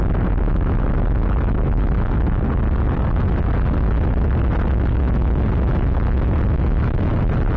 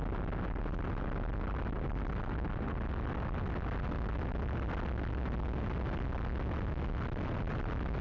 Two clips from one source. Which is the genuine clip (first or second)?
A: second